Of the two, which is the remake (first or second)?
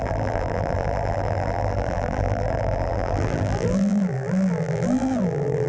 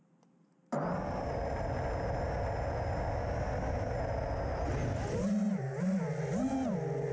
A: first